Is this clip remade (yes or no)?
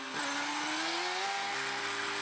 no